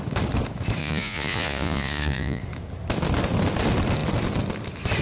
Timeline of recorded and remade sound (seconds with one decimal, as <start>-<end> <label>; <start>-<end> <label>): 0.0-0.8 recorded; 0.8-2.4 remade; 2.4-5.0 recorded